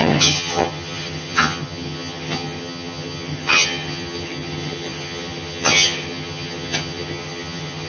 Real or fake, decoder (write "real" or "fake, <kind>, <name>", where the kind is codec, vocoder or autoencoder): fake, vocoder, HiFi-GAN